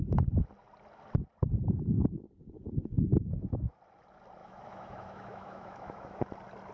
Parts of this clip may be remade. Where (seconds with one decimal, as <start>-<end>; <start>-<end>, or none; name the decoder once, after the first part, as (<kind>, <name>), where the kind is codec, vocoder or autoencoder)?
3.1-3.8 (autoencoder, DAC-VAE); 4.4-6.2